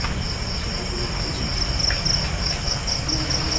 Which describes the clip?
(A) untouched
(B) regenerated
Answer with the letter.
A